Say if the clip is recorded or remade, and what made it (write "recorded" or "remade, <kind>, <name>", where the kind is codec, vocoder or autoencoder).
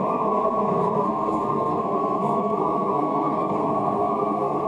remade, codec, SNAC